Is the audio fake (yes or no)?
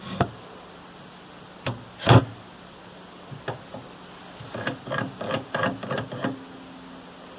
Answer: no